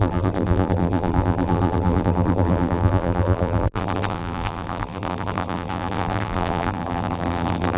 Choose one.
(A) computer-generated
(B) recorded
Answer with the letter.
A